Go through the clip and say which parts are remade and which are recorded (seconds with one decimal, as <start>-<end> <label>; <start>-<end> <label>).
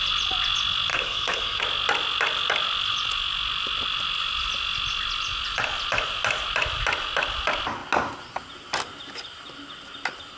0.0-0.9 recorded; 0.9-1.6 remade; 1.6-10.4 recorded